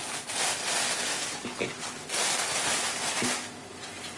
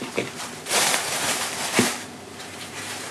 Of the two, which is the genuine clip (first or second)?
first